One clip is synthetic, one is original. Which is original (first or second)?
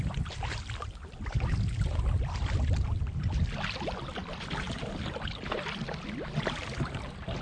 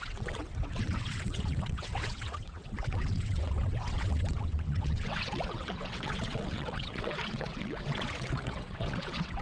first